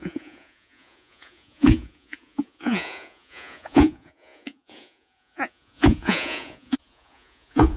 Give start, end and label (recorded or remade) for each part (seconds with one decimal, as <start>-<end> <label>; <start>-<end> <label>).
0.0-7.8 remade